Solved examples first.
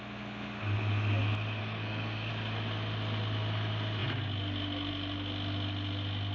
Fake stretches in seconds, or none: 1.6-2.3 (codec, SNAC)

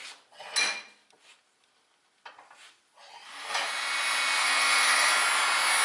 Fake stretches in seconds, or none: 4.4-5.1 (codec, SNAC)

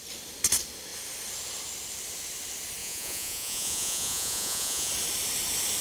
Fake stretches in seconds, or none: 2.8-4.9 (vocoder, Vocos)

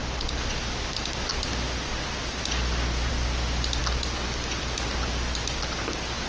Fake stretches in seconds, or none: none